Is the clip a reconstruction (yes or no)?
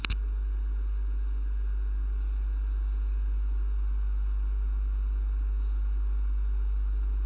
no